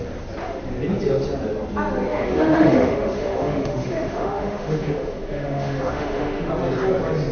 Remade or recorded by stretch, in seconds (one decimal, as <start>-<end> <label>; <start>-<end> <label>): 0.0-2.1 recorded; 2.1-6.5 remade; 6.5-7.3 recorded